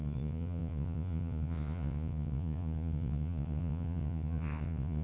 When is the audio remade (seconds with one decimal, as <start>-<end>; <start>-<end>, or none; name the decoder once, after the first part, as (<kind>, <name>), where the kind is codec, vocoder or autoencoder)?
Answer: 0.0-5.0 (vocoder, Vocos)